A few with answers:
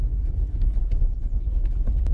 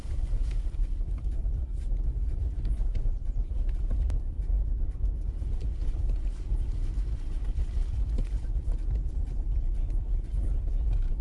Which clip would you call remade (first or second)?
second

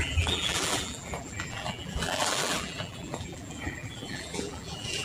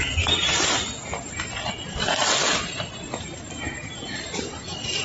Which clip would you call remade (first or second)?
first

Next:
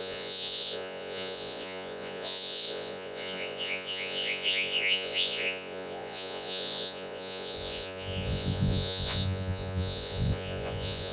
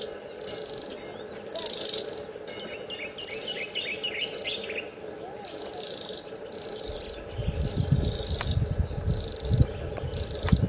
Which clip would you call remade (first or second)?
first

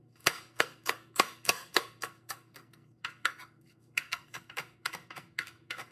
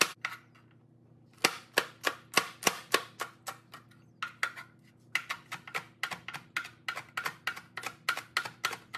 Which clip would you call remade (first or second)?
first